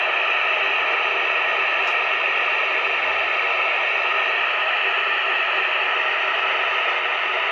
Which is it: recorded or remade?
recorded